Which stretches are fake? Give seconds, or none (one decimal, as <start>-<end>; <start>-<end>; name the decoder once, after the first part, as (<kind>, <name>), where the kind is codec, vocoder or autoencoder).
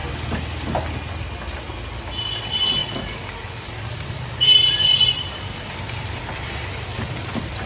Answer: 2.8-7.7 (vocoder, BigVGAN v2)